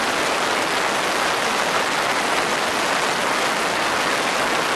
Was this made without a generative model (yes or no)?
yes